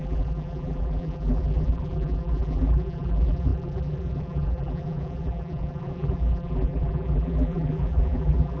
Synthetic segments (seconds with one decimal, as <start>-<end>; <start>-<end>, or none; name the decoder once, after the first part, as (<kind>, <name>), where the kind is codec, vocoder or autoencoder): 0.0-8.6 (vocoder, BigVGAN v2)